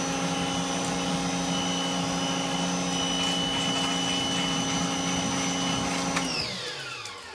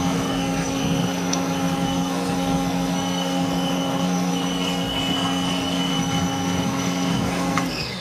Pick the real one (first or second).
first